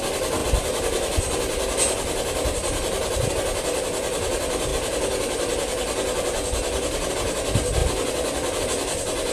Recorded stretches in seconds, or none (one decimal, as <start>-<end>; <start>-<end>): 0.0-0.4; 3.3-7.8; 8.6-9.3